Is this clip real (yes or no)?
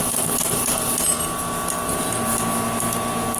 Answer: yes